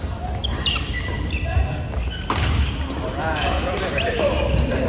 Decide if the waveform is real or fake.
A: real